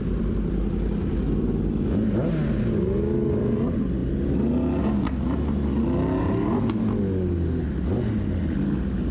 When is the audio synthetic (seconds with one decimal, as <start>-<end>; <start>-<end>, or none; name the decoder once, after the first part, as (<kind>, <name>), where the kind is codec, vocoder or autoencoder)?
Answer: none